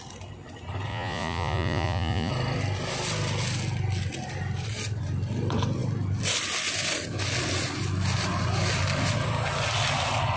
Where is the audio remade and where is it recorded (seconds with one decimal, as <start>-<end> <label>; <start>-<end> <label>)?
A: 0.0-0.9 recorded; 0.9-2.3 remade; 2.3-10.4 recorded